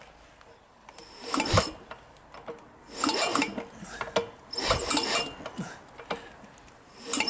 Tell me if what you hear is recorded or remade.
recorded